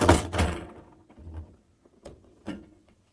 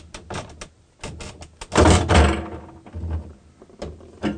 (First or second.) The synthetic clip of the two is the first